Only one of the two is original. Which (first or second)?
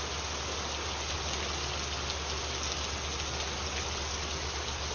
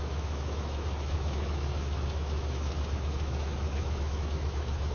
first